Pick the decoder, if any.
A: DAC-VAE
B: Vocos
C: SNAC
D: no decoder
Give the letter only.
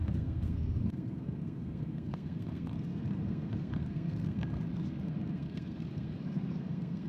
C